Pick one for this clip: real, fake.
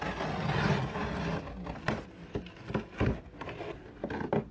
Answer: real